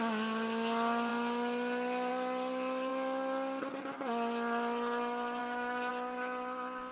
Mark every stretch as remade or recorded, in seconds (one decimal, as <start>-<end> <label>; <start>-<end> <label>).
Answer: 0.0-5.4 recorded; 5.4-5.9 remade; 5.9-6.9 recorded